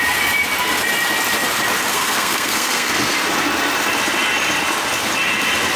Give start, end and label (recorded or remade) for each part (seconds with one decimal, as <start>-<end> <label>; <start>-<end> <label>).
0.0-1.9 recorded; 1.9-2.9 remade; 2.9-5.8 recorded